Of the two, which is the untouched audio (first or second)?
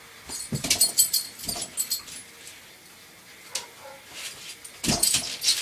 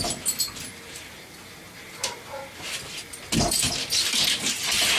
first